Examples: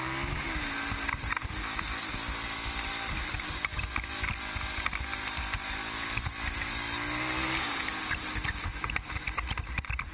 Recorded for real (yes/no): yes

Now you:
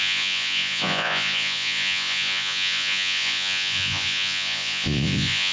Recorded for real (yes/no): no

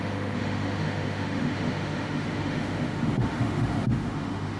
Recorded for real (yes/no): no